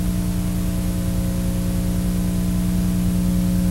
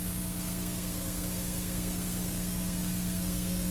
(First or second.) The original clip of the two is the first